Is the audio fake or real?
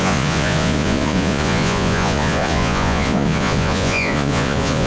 fake